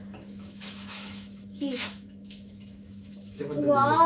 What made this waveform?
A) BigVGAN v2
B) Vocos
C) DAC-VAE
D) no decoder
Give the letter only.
C